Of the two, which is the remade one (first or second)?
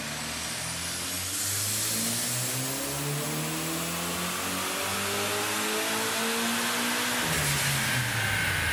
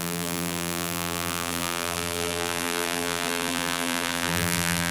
second